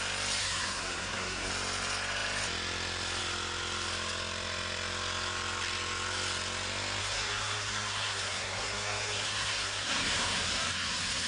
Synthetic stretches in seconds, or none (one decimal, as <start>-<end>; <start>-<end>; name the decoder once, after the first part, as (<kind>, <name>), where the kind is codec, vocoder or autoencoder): 0.4-1.5 (codec, SNAC); 7.0-11.3